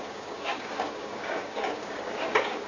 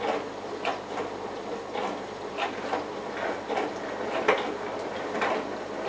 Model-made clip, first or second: first